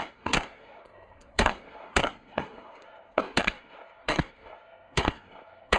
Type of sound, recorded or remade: remade